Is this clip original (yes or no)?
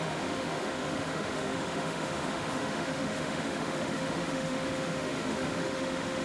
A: no